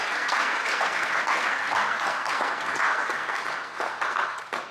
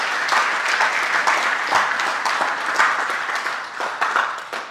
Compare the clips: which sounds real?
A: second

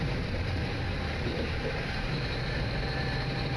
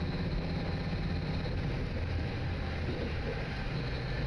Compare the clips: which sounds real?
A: second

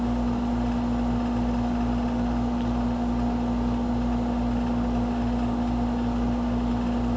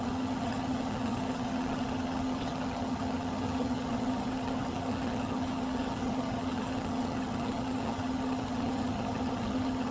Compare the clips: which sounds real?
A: first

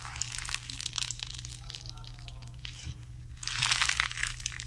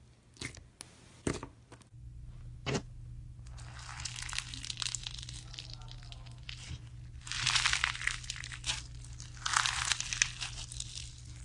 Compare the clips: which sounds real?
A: second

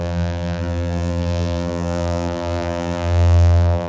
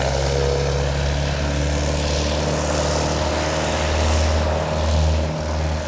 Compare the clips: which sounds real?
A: second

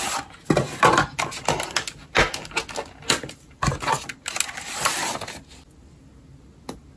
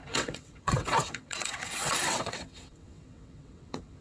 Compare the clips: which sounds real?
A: first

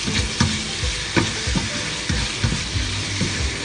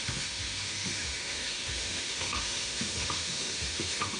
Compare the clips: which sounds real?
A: first